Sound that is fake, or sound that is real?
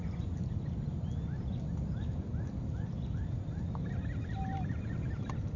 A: real